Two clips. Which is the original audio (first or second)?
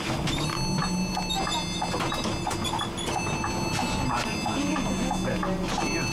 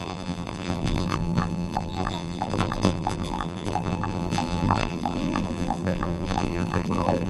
first